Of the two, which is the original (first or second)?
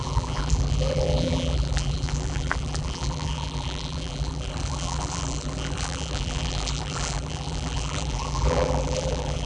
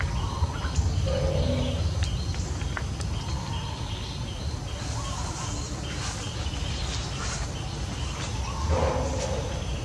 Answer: second